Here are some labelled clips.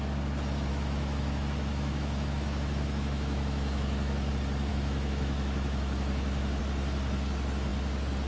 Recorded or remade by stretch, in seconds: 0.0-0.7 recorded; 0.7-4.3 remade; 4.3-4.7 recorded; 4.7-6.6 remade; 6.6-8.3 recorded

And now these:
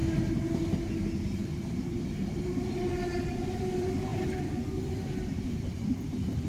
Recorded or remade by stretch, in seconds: 0.0-6.5 recorded

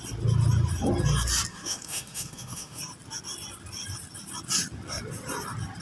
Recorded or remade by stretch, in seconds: 0.0-1.5 recorded; 1.5-2.8 remade; 2.8-5.8 recorded

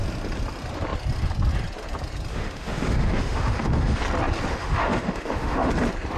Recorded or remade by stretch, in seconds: 0.0-2.3 recorded; 2.3-4.0 remade; 4.0-4.5 recorded; 4.5-5.7 remade; 5.7-6.2 recorded

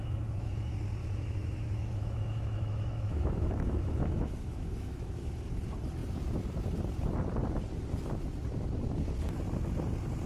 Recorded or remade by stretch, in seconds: 0.0-0.5 remade; 0.5-1.0 recorded; 1.0-5.3 remade; 5.3-10.3 recorded